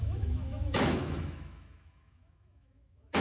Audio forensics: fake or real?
fake